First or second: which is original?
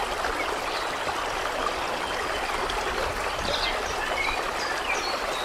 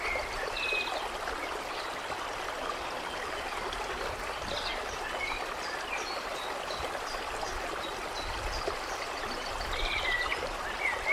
first